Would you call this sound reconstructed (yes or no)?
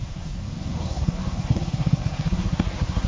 yes